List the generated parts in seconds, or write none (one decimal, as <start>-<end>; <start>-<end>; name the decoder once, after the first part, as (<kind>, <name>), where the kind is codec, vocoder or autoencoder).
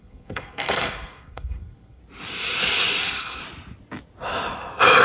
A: 0.0-2.0 (codec, SNAC); 3.0-3.4